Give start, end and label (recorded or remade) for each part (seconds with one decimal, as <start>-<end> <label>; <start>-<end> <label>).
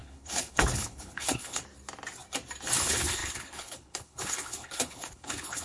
0.0-1.6 remade; 1.6-2.8 recorded; 2.8-5.6 remade